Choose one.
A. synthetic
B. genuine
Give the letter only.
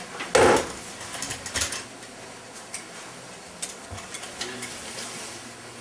B